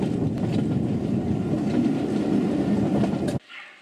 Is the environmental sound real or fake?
real